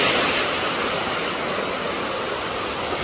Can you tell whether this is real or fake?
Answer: real